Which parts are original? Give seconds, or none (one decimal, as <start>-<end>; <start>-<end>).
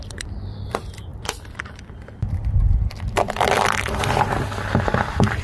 none